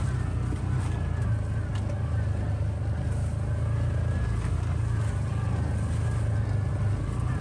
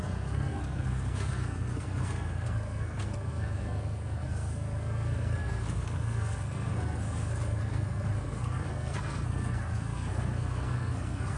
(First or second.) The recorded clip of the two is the first